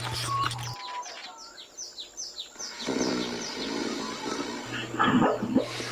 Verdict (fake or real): real